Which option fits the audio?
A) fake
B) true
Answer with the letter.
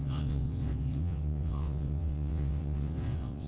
A